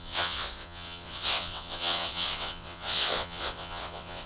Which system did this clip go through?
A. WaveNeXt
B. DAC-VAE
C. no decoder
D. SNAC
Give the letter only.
A